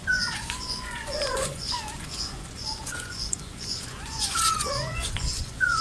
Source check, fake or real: fake